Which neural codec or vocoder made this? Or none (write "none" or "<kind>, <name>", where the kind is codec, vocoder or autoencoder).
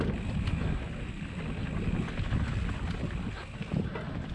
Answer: none